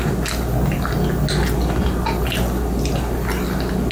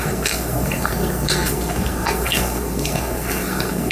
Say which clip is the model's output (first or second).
second